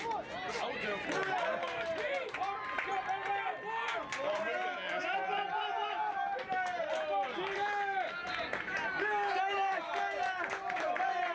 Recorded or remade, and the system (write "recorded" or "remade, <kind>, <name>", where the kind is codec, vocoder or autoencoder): recorded